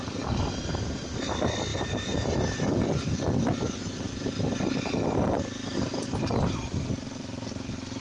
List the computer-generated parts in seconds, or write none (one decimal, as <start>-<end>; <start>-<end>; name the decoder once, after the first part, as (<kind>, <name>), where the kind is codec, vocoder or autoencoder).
1.7-2.7 (vocoder, BigVGAN v2)